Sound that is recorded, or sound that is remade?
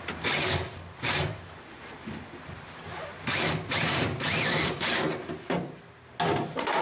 recorded